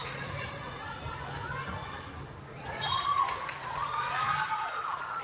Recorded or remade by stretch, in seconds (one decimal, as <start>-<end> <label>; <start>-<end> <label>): 0.0-0.9 remade; 0.9-2.5 recorded; 2.5-5.2 remade